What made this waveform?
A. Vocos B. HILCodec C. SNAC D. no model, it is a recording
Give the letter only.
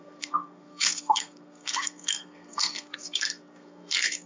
C